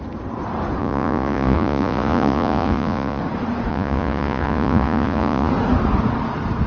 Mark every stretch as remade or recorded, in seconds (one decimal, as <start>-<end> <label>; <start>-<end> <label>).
0.0-0.8 recorded; 0.8-3.2 remade; 3.2-3.7 recorded; 3.7-5.5 remade; 5.5-6.7 recorded